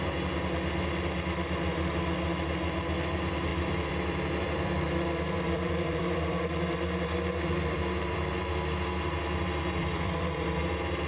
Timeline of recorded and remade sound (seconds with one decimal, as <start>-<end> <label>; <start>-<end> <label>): 0.0-3.5 recorded; 3.5-8.2 remade; 8.2-9.8 recorded; 9.8-10.6 remade; 10.6-11.1 recorded